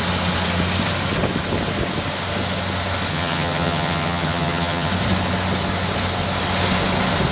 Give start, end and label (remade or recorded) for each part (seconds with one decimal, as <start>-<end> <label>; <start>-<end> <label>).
0.0-3.1 recorded; 3.1-4.9 remade; 4.9-7.3 recorded